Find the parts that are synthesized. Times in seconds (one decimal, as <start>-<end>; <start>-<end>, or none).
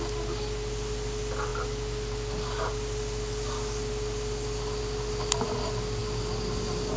none